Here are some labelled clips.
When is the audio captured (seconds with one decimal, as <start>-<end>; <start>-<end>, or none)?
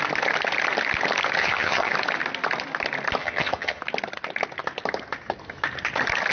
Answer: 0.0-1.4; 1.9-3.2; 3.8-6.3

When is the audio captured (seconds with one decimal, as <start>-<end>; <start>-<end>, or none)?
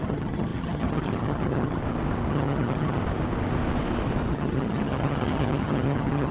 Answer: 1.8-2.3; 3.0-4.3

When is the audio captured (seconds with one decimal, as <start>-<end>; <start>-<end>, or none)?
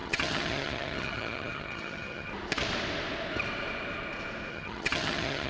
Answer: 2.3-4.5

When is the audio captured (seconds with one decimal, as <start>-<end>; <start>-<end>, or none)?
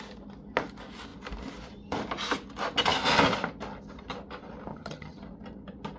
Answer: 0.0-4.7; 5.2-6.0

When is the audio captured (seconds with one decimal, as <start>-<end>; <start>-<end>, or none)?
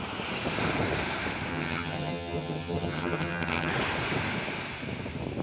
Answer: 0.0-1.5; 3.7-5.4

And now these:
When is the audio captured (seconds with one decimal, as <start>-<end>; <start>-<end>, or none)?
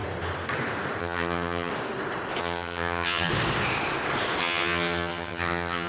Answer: 0.0-1.0; 1.7-2.4; 3.3-4.4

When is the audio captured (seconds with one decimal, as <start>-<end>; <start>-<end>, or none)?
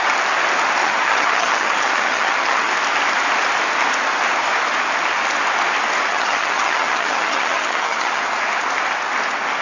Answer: 0.0-0.8; 2.7-6.1; 8.2-9.6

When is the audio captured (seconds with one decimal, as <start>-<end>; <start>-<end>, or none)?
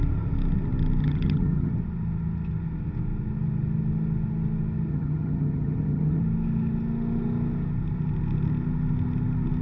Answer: 0.0-1.0; 1.7-4.9; 6.2-9.6